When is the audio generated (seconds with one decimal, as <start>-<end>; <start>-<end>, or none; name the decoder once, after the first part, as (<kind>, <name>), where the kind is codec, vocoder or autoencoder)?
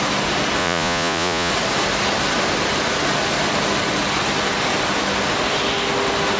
0.6-1.5 (vocoder, Vocos)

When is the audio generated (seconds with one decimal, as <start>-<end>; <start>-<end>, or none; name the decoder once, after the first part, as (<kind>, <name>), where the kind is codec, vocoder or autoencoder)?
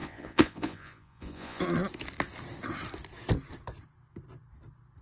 0.0-1.6 (vocoder, Vocos)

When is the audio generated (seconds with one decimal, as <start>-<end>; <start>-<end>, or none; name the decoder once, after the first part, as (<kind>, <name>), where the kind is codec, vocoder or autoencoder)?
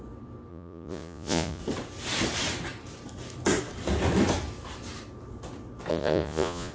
0.5-1.6 (vocoder, Vocos); 5.9-6.7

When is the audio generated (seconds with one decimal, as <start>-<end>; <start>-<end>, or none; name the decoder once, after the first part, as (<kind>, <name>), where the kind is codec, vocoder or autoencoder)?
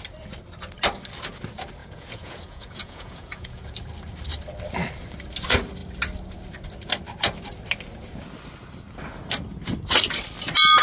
1.8-3.6 (vocoder, Vocos)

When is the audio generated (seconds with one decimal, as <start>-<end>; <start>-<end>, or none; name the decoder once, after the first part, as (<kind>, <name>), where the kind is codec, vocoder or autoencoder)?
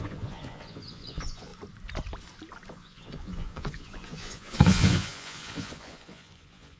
0.0-1.5 (vocoder, Vocos); 2.7-6.8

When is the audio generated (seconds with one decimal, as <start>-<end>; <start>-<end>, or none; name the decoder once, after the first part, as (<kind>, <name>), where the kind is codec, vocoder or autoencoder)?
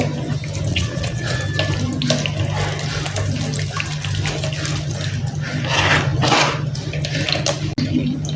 0.7-1.4 (vocoder, Vocos)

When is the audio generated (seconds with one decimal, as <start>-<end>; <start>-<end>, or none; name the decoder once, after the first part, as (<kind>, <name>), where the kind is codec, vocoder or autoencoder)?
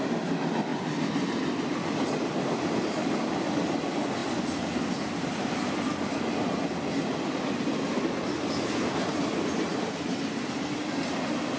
none